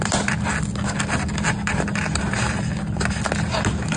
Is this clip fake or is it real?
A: real